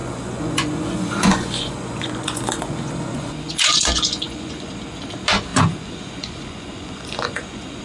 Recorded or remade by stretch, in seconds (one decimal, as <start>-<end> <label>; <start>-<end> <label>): 0.0-4.7 remade; 4.7-5.5 recorded; 5.5-7.8 remade